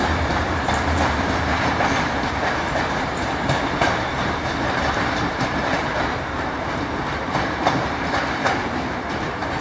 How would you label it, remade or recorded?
remade